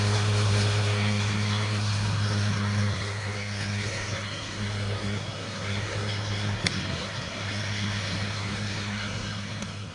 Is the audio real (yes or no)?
no